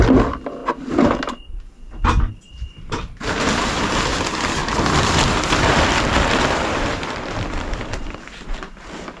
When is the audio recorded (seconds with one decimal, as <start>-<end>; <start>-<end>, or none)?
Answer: 0.0-4.6; 8.5-9.2